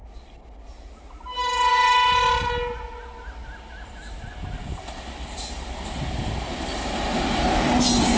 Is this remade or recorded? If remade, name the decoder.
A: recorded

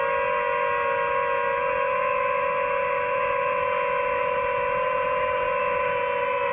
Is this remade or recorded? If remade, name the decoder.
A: recorded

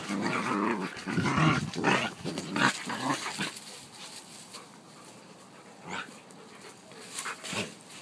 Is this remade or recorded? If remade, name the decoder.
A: recorded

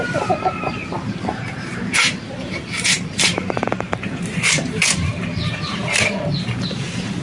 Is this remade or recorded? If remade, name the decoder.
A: remade, vocoder, BigVGAN v2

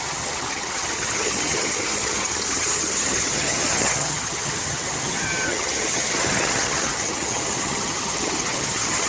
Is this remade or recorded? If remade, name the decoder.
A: remade, vocoder, HiFi-GAN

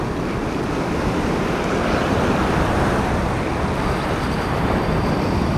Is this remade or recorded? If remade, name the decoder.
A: recorded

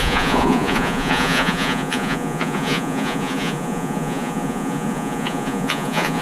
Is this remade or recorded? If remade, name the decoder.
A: remade, vocoder, Vocos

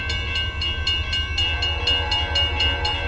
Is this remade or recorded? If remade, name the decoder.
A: recorded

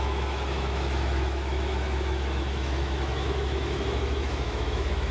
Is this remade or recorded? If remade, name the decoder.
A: remade, autoencoder, DAC-VAE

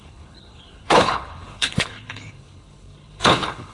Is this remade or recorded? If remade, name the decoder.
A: remade, codec, HILCodec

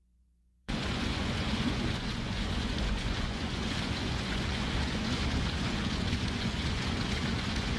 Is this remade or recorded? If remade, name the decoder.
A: remade, vocoder, Vocos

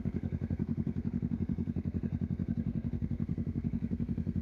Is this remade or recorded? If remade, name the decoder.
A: remade, codec, SNAC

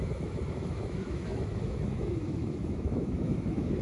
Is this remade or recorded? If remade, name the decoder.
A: remade, autoencoder, DAC-VAE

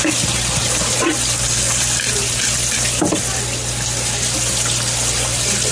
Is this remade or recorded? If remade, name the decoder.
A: recorded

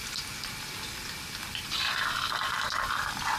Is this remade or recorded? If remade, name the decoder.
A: recorded